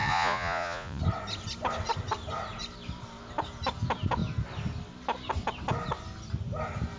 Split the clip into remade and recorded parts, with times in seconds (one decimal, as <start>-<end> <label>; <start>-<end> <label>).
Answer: 0.0-1.0 remade; 1.0-7.0 recorded